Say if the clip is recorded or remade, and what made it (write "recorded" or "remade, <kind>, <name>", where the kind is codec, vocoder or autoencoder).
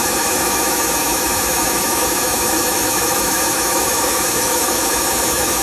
remade, autoencoder, DAC-VAE